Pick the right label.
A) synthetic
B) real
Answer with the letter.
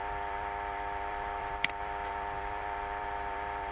A